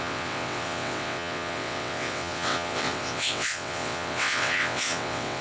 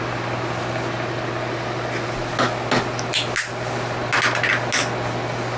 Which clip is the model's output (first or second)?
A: first